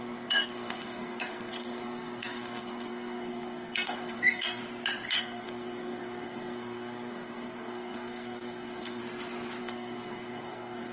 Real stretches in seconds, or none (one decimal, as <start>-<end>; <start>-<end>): 4.6-5.2; 9.0-9.6

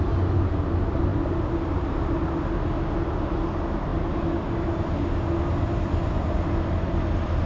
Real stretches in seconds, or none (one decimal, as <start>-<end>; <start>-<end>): 0.0-7.5

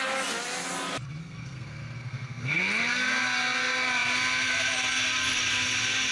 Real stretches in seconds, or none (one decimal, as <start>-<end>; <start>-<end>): 0.0-1.2; 2.6-6.1

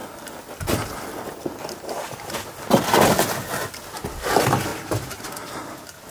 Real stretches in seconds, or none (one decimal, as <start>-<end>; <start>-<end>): 0.0-6.1

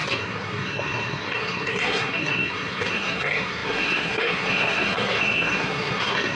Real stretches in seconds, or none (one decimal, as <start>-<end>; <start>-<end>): none

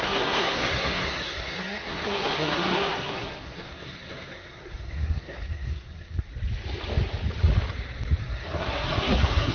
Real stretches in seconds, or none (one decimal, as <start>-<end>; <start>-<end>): 6.3-8.2

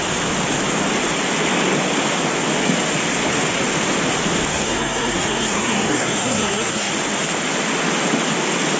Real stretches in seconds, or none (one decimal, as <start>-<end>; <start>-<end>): 0.0-4.5; 6.9-8.8

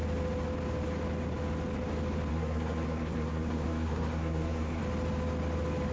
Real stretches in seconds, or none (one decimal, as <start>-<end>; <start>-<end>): 0.0-2.3; 4.8-5.9